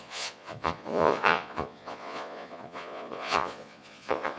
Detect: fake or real fake